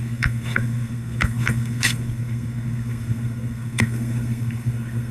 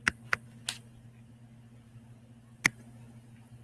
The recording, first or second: second